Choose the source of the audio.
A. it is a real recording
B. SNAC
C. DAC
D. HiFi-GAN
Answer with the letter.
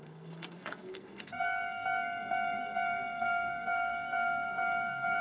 B